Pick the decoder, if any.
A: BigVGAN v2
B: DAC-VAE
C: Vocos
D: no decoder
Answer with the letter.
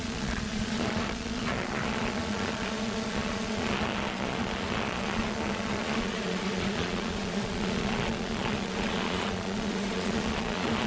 C